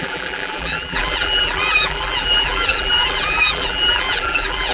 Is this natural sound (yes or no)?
no